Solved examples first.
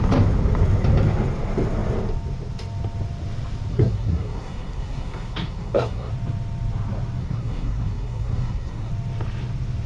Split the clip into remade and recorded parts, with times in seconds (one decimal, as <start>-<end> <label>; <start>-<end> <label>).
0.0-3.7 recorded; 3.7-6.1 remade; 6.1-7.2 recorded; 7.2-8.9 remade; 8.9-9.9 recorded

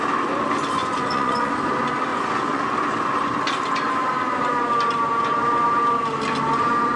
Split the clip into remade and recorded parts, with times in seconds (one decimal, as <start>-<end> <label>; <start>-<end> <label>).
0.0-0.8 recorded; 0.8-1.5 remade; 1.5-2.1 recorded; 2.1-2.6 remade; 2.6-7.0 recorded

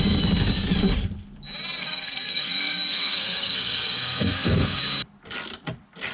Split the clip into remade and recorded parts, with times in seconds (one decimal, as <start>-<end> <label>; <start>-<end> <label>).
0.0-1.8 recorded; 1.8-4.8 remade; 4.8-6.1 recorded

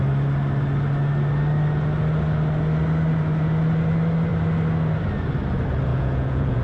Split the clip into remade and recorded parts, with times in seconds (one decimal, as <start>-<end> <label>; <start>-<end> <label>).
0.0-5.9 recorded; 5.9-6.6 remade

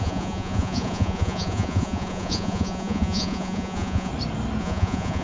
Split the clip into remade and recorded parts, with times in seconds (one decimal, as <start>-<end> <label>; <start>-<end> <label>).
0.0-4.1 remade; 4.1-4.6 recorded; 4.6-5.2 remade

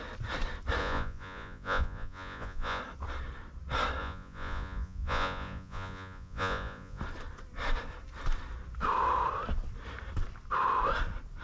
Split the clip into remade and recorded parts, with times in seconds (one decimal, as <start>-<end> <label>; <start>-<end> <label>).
0.0-0.8 recorded; 0.8-2.8 remade; 2.8-4.0 recorded; 4.0-7.0 remade; 7.0-11.4 recorded